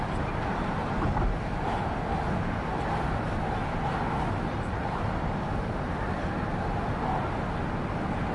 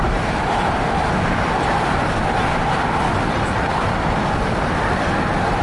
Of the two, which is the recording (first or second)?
first